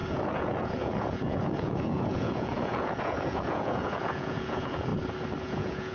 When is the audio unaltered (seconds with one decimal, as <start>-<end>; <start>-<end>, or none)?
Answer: 4.9-5.4